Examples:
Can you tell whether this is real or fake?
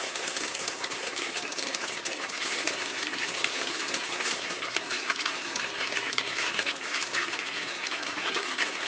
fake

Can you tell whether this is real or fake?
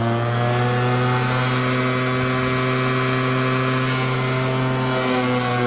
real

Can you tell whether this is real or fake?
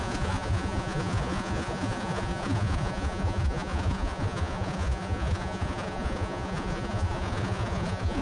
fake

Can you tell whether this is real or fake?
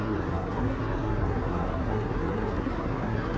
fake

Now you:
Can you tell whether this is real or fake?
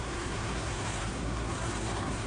fake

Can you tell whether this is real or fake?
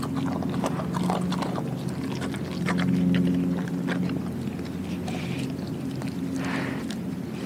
real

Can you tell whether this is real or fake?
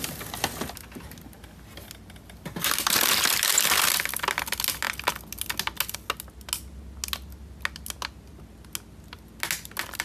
real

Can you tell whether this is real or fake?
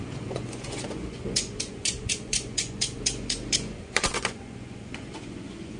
fake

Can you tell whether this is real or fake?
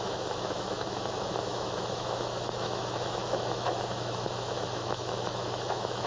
fake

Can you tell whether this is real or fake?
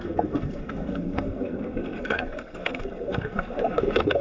fake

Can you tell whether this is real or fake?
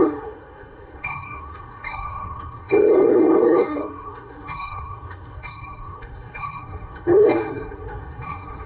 fake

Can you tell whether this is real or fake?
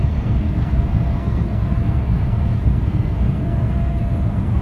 fake